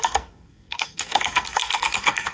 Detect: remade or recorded remade